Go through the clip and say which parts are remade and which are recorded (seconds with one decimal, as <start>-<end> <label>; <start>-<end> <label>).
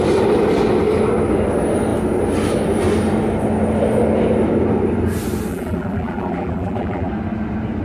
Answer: 0.0-5.5 recorded; 5.5-7.1 remade; 7.1-7.8 recorded